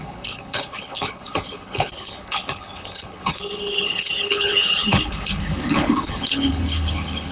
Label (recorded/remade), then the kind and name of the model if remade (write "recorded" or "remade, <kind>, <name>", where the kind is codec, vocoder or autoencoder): remade, codec, HILCodec